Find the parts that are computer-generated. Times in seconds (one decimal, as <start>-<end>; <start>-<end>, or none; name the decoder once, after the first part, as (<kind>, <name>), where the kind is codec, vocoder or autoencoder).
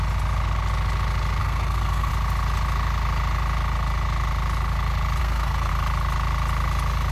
1.4-2.1 (codec, SNAC); 5.2-5.7